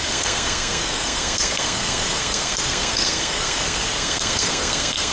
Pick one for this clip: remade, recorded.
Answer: remade